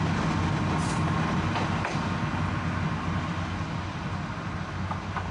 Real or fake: real